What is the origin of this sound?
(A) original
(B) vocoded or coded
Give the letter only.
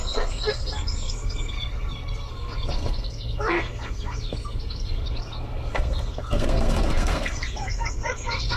B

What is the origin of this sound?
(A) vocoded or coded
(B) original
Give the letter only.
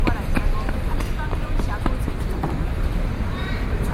A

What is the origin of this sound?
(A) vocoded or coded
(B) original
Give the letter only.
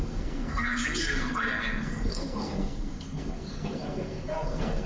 A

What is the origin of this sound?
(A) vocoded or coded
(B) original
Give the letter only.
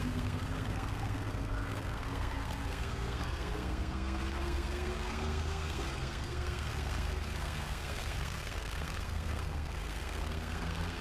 A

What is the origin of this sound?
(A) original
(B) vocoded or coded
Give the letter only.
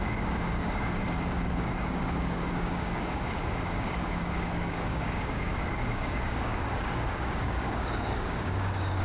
B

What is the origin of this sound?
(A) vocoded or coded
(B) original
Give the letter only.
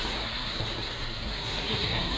A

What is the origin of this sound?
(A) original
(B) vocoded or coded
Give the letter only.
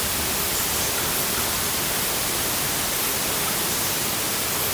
A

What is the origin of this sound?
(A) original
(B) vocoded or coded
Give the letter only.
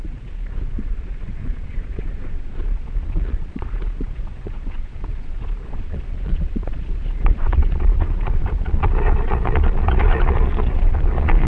B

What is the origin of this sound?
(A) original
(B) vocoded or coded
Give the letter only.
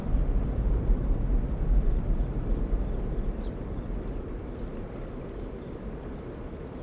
A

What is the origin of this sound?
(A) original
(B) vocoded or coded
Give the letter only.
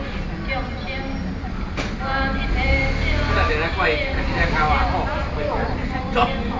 A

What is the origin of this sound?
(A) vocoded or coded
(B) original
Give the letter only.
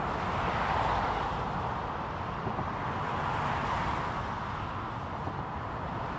B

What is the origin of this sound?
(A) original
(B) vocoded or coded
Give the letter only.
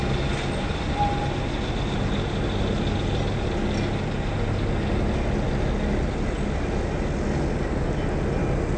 A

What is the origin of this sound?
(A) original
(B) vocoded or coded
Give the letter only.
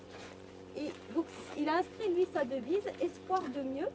B